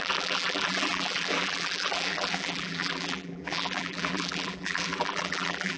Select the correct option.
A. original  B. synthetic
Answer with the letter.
B